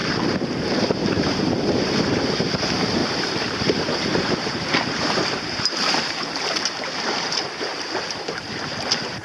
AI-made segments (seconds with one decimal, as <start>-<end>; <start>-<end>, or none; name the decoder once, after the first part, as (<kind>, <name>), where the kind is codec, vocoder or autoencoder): 0.0-3.0 (vocoder, BigVGAN v2); 3.8-7.7